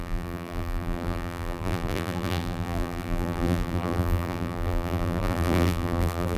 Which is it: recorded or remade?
remade